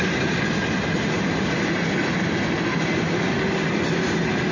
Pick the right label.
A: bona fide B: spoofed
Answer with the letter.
A